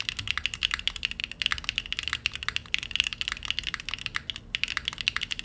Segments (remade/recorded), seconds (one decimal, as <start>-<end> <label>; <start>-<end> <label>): 0.0-5.4 recorded